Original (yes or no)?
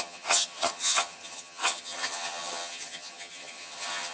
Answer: no